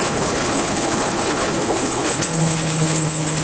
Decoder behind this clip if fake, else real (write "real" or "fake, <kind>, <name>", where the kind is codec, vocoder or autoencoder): fake, codec, HILCodec